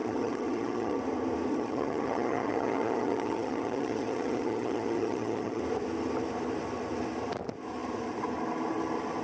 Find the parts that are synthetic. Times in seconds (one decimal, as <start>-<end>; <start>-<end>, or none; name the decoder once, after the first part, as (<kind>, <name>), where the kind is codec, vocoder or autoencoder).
0.0-1.0 (vocoder, HiFi-GAN); 1.5-5.6